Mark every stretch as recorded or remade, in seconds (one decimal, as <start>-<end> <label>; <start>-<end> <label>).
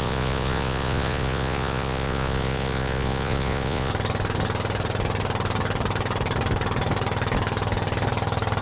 0.0-3.9 remade; 3.9-8.6 recorded